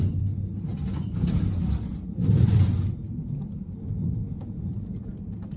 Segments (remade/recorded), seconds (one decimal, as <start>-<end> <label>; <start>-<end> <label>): 0.0-0.7 remade; 0.7-1.6 recorded; 1.6-5.6 remade